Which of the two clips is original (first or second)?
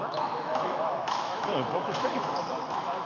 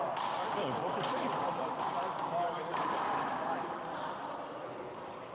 second